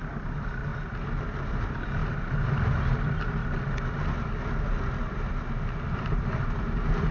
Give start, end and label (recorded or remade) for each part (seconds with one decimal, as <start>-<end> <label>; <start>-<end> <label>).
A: 0.0-0.7 remade; 0.7-1.5 recorded; 1.5-3.4 remade; 3.4-6.0 recorded; 6.0-7.1 remade